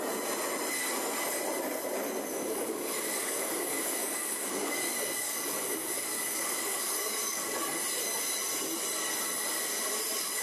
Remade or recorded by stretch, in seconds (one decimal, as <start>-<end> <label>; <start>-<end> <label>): 0.0-2.3 recorded; 2.3-7.6 remade; 7.6-10.4 recorded